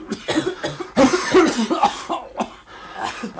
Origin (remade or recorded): recorded